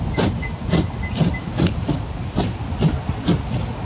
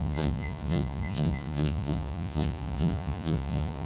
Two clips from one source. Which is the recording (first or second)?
first